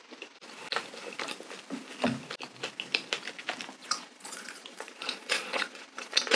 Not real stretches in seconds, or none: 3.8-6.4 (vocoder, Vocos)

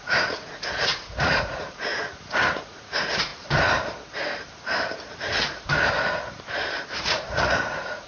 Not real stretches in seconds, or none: 0.0-1.9 (vocoder, Vocos); 2.5-3.3; 7.0-8.1

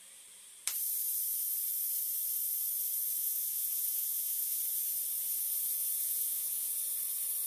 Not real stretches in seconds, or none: 3.2-4.6 (vocoder, Vocos); 6.0-6.7

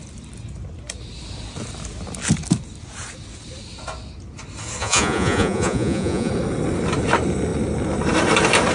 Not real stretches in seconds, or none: 4.8-6.3 (vocoder, Vocos)

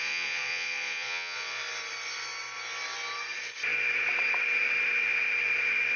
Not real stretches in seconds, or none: 0.0-1.6 (vocoder, Vocos)

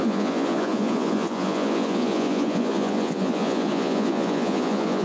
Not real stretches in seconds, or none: 0.0-5.0 (vocoder, Vocos)

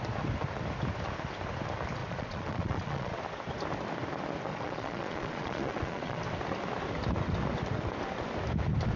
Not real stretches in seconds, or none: 2.0-3.2 (vocoder, Vocos); 4.5-6.2